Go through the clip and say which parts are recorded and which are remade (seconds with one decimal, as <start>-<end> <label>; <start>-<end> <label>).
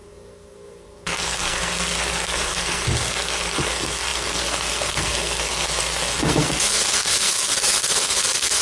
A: 0.0-8.6 remade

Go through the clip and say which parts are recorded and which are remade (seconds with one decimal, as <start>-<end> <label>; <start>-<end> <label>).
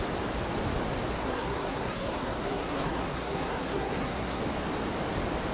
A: 0.0-1.2 recorded; 1.2-4.4 remade; 4.4-5.5 recorded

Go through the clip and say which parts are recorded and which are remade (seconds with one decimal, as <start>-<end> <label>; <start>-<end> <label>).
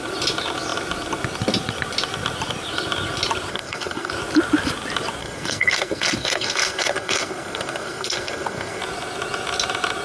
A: 0.0-3.5 recorded; 3.5-4.1 remade; 4.1-5.2 recorded; 5.2-8.8 remade; 8.8-10.0 recorded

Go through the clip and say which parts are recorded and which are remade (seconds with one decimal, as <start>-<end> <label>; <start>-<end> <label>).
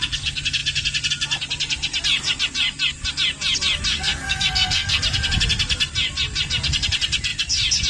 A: 0.0-3.9 recorded; 3.9-5.0 remade; 5.0-7.9 recorded